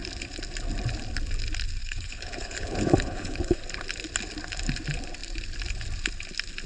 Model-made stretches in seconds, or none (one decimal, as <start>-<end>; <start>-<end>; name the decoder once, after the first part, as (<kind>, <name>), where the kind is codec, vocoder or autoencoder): 1.8-3.6 (codec, HILCodec)